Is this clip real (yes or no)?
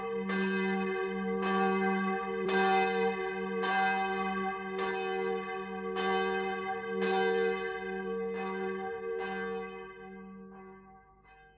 yes